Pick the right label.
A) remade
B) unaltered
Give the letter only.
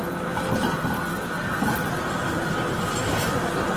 B